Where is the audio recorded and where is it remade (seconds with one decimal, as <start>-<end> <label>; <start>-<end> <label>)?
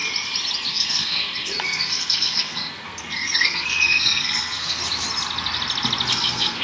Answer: 0.0-0.7 recorded; 0.7-4.8 remade; 4.8-6.1 recorded; 6.1-6.6 remade